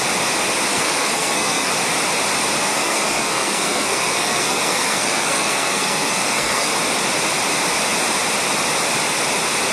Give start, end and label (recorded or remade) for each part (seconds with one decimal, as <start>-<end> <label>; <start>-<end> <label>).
0.0-0.7 recorded; 0.7-1.7 remade; 1.7-2.6 recorded; 2.6-6.7 remade; 6.7-9.7 recorded

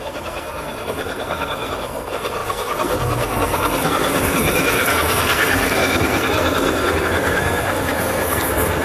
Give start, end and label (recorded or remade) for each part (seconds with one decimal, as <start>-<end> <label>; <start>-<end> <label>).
0.0-8.8 remade

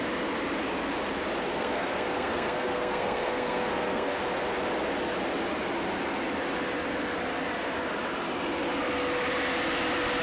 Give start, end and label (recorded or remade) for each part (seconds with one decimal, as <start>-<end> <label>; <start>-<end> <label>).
0.0-1.4 recorded; 1.4-4.2 remade; 4.2-10.2 recorded

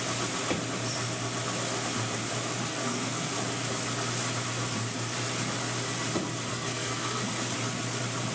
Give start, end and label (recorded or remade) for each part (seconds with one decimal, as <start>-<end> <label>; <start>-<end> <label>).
0.0-2.7 recorded; 2.7-3.3 remade; 3.3-6.5 recorded; 6.5-7.3 remade; 7.3-8.3 recorded

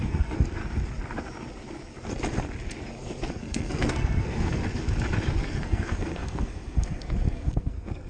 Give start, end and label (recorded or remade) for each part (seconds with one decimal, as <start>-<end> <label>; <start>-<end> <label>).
0.0-0.6 remade; 0.6-3.3 recorded; 3.3-4.6 remade; 4.6-5.3 recorded; 5.3-8.1 remade

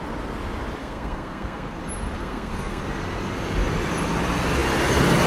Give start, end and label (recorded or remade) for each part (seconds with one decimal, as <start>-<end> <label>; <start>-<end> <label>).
0.0-0.8 recorded; 0.8-1.8 remade; 1.8-2.2 recorded; 2.2-2.8 remade; 2.8-5.3 recorded